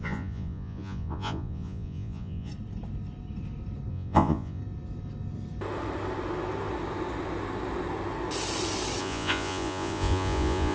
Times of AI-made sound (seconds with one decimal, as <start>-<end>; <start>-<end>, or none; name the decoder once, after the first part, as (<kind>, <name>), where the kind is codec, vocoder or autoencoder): 0.0-2.5 (vocoder, Vocos); 3.9-4.6; 9.0-10.7